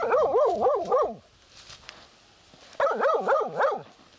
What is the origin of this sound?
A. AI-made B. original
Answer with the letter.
B